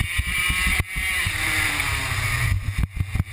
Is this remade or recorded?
recorded